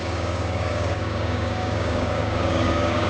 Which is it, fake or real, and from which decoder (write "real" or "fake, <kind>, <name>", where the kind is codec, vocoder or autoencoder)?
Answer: fake, codec, DAC